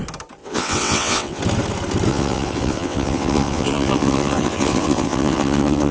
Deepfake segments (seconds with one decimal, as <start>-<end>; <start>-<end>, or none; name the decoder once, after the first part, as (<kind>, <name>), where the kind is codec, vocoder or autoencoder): 0.4-1.4 (vocoder, WaveNeXt); 2.1-5.9